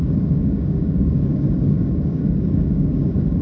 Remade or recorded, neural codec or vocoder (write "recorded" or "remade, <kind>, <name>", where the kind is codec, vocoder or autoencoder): remade, codec, DAC